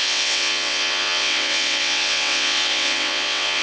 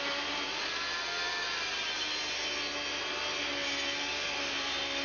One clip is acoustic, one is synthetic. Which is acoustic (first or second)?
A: second